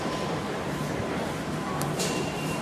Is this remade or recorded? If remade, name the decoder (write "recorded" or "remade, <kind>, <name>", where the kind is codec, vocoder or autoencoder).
remade, vocoder, BigVGAN v2